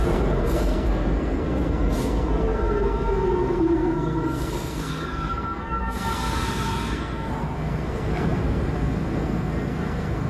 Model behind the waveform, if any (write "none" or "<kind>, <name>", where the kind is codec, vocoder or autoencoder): codec, SNAC